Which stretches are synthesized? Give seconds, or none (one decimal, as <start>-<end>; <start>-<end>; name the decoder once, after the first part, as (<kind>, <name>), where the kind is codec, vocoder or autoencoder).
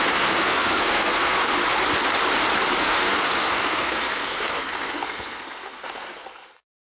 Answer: 0.0-1.4 (codec, SNAC); 2.8-6.9